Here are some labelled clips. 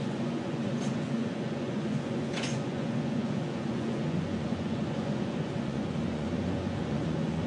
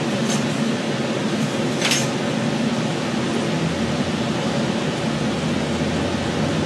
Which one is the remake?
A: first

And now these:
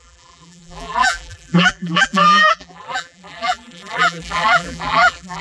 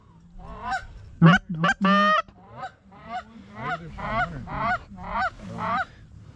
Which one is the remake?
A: first